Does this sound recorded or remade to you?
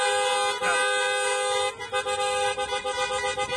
recorded